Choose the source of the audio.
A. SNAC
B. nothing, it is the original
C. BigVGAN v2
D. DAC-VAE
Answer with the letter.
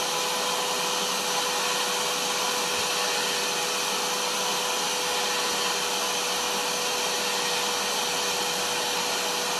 B